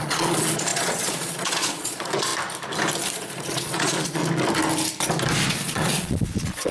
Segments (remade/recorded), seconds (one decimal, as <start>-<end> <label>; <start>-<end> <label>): 0.0-2.3 remade; 2.3-3.1 recorded; 3.1-4.2 remade; 4.2-5.5 recorded; 5.5-6.7 remade